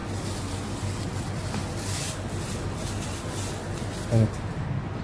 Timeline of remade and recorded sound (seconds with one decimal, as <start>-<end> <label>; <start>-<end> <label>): 0.0-5.0 recorded